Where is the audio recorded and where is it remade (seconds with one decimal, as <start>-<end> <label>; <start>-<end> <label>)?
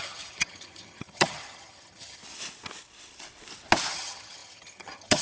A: 0.0-2.2 remade; 2.2-3.9 recorded; 3.9-5.2 remade